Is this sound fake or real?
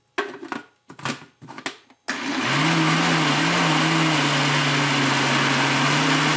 real